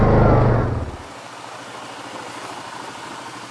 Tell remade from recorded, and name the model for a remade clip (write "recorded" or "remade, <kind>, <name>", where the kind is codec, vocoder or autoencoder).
recorded